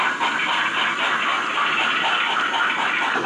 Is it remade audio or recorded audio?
recorded